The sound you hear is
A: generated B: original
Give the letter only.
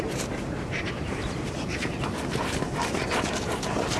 A